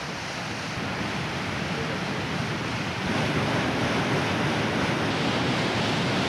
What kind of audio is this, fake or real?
real